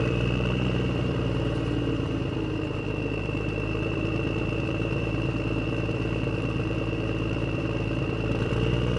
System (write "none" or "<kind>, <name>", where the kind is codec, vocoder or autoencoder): vocoder, BigVGAN v2